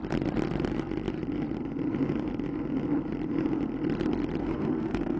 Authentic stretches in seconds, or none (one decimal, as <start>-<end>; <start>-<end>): 0.0-4.4